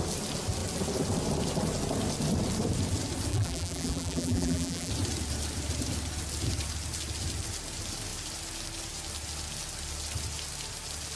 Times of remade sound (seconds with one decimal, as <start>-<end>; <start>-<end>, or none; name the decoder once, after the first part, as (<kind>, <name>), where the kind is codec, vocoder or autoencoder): 3.3-4.9 (vocoder, BigVGAN v2)